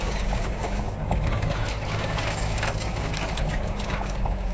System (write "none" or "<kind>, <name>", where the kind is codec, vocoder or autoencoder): codec, DAC